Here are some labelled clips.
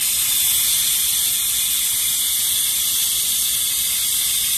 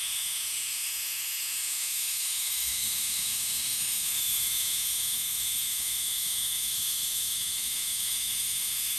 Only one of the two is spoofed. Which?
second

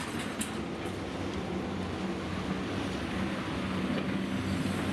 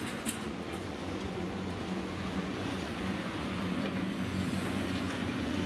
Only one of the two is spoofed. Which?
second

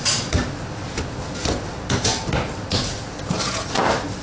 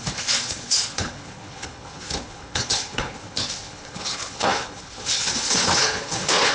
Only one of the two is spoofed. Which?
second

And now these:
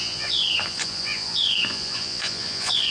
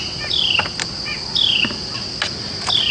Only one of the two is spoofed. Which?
first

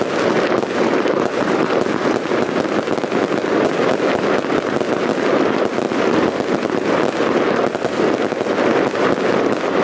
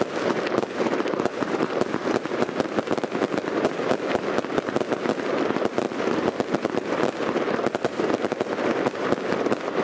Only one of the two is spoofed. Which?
second